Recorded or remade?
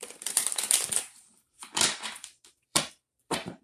remade